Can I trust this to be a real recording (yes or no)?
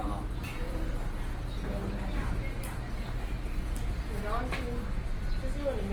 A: yes